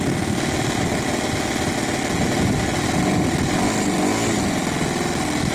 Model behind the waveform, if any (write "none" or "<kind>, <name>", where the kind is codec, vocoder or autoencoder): none